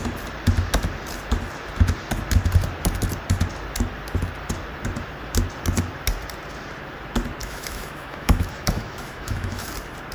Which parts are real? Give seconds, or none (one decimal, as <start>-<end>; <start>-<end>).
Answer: 0.0-7.4; 9.7-10.1